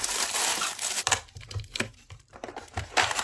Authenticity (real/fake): fake